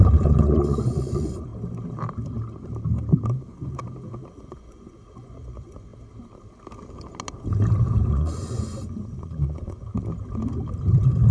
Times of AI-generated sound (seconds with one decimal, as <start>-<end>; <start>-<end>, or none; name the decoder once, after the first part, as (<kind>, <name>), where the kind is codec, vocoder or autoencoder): 0.0-1.5 (vocoder, Vocos); 4.4-5.9; 8.1-9.9